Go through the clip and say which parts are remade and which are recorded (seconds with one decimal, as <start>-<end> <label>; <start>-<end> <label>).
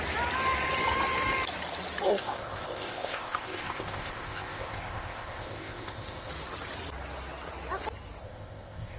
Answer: 0.0-2.1 recorded; 2.1-6.3 remade; 6.3-8.2 recorded; 8.2-9.0 remade